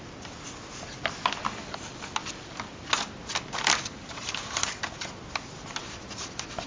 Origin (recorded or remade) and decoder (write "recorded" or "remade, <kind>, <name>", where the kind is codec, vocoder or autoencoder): recorded